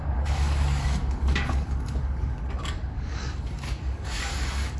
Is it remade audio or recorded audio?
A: remade